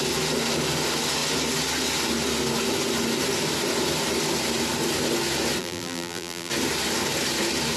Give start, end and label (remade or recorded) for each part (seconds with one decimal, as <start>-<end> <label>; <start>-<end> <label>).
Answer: 0.0-5.6 recorded; 5.6-6.5 remade; 6.5-7.8 recorded